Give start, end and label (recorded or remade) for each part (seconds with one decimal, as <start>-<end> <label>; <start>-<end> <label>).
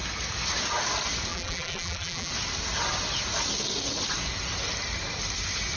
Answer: 0.0-1.3 recorded; 1.3-2.3 remade; 2.3-5.8 recorded